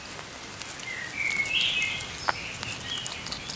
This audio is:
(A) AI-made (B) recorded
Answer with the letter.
B